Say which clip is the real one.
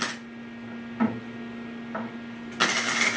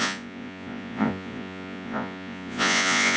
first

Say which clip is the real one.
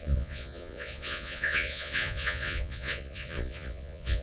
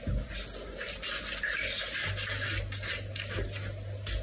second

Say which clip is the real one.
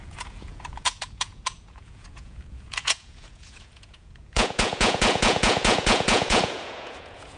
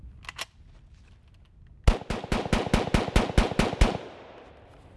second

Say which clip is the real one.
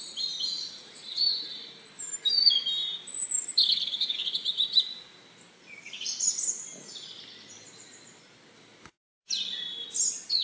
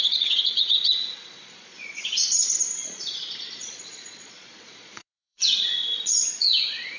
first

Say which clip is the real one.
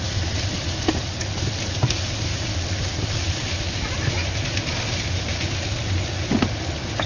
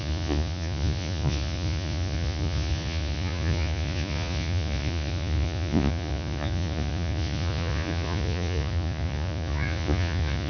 first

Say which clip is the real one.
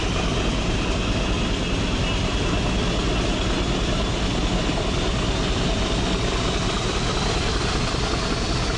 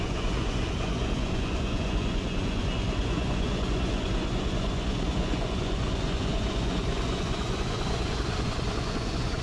first